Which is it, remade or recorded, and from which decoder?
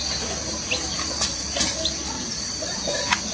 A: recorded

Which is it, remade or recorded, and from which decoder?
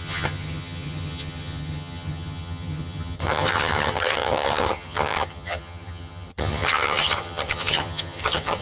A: remade, vocoder, HiFi-GAN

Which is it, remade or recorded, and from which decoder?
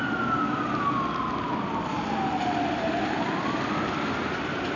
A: recorded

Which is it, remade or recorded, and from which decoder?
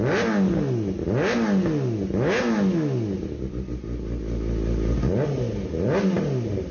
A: recorded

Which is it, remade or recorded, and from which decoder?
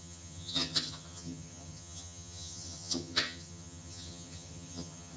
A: remade, vocoder, HiFi-GAN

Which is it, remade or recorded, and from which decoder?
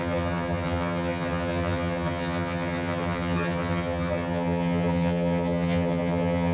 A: remade, vocoder, HiFi-GAN